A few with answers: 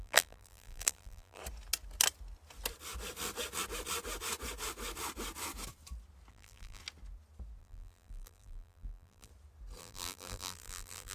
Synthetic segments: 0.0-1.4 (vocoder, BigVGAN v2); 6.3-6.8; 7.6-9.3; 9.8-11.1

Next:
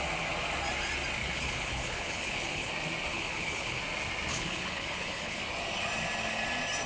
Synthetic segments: 1.2-2.7 (codec, HILCodec); 3.1-3.8; 4.3-5.4

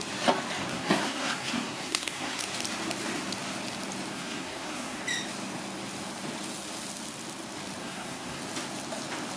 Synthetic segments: 0.7-2.4 (codec, SNAC); 4.1-5.0; 7.8-8.4

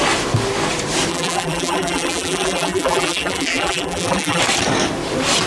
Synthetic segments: 1.1-4.4 (vocoder, BigVGAN v2)

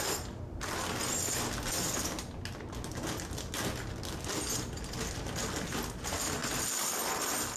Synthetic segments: none

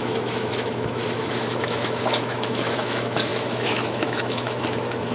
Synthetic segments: 0.0-5.1 (autoencoder, DAC-VAE)

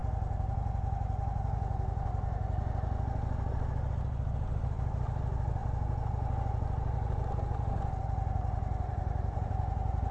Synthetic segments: 5.0-5.6 (vocoder, BigVGAN v2); 8.0-10.1

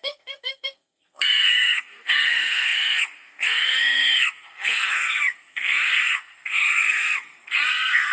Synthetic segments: 0.0-8.1 (codec, SNAC)